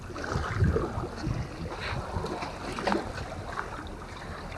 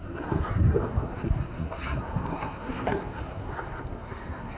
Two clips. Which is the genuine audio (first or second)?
first